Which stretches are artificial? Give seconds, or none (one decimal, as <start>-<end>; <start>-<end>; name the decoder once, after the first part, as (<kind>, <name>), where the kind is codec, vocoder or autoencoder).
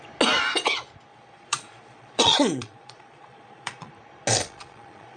1.1-3.9 (vocoder, Vocos); 4.4-5.2